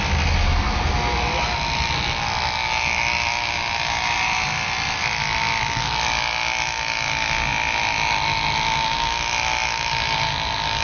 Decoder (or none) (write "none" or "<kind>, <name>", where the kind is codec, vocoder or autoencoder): none